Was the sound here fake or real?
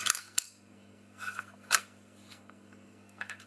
fake